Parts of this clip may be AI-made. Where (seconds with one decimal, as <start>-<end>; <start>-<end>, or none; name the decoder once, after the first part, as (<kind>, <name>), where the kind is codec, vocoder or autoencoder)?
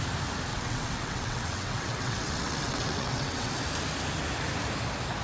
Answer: 0.5-3.5 (vocoder, WaveNeXt)